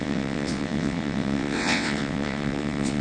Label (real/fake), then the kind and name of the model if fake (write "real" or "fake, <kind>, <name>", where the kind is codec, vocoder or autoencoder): fake, vocoder, WaveNeXt